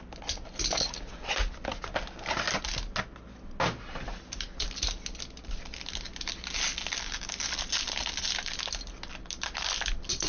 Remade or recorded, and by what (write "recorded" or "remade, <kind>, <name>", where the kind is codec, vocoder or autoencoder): recorded